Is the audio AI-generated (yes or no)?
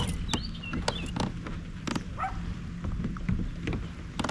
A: no